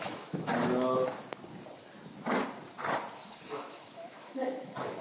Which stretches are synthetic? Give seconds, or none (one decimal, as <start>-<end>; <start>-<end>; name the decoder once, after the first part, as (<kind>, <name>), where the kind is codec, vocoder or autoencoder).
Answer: 0.0-0.5 (autoencoder, DAC-VAE); 3.5-5.0